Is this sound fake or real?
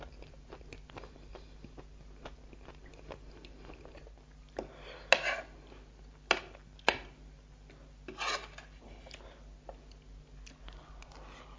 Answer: real